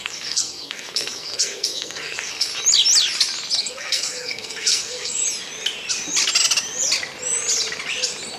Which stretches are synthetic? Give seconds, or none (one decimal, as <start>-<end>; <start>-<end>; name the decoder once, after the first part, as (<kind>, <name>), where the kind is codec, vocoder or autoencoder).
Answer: 0.0-2.5 (codec, SNAC); 3.6-5.2